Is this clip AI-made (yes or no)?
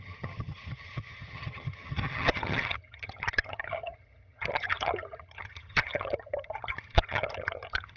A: yes